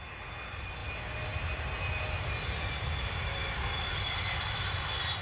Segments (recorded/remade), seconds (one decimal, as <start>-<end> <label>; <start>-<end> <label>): 0.0-5.2 recorded